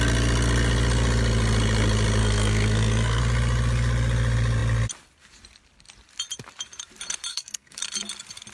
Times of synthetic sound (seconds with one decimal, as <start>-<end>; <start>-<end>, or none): 2.2-3.2; 7.3-7.8